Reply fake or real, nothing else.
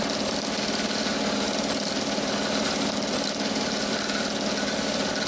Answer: real